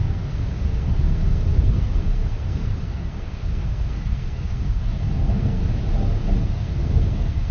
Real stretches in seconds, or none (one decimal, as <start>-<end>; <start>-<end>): 5.6-6.4